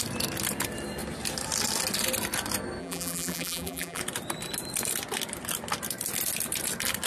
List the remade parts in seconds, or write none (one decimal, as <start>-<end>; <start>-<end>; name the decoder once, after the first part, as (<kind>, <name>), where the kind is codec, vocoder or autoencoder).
2.8-4.0 (vocoder, BigVGAN v2)